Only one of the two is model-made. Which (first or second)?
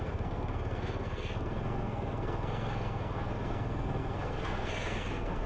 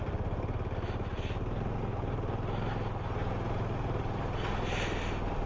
first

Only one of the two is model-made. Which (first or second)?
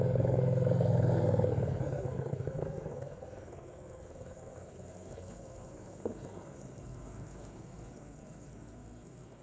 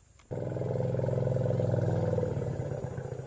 first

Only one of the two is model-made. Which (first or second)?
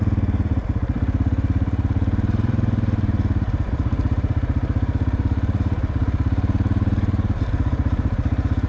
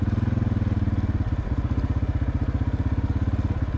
first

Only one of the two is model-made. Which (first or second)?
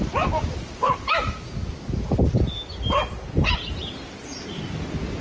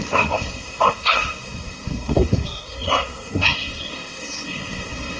second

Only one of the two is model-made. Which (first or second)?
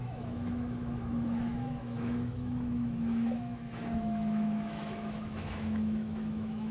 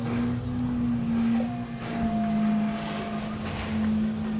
first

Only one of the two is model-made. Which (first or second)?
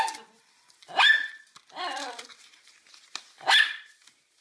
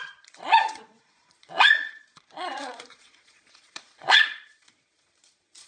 second